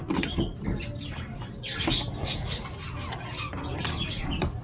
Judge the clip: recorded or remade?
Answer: recorded